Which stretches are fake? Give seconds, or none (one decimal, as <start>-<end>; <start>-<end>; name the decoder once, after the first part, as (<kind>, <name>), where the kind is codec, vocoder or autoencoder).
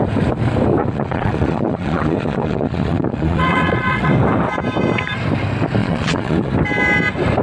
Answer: 0.8-4.1 (vocoder, Vocos); 5.8-6.5